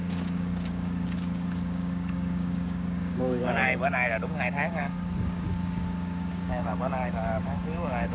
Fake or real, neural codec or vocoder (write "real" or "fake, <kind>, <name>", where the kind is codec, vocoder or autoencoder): fake, codec, DAC